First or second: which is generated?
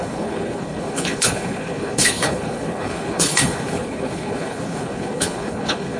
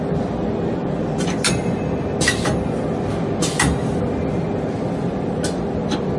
first